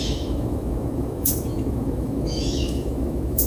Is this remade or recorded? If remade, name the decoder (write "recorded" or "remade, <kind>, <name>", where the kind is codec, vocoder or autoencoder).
remade, autoencoder, DAC-VAE